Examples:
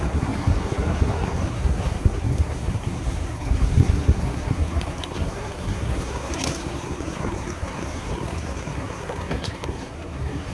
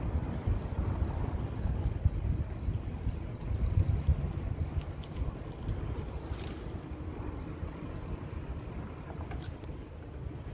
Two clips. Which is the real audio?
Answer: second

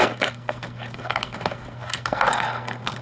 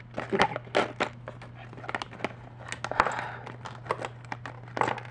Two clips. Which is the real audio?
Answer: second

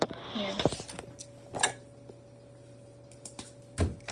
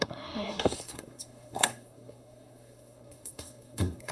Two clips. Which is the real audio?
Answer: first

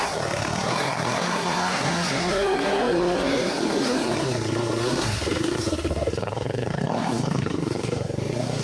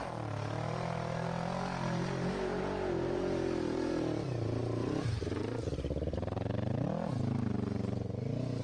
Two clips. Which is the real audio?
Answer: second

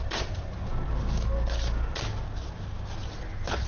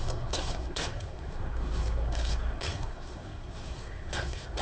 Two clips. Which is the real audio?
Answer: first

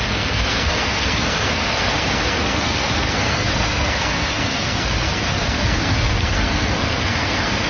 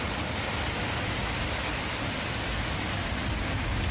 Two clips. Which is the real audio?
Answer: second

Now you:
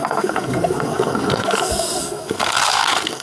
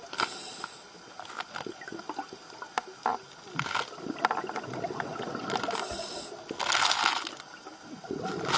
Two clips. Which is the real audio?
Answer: second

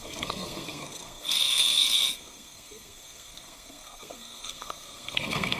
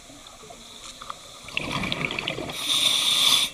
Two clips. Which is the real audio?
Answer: second